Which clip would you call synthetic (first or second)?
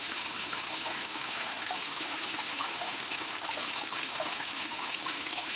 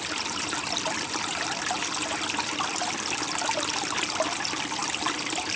first